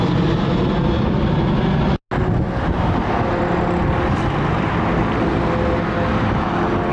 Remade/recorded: recorded